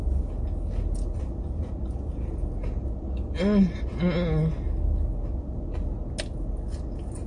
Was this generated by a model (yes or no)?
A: no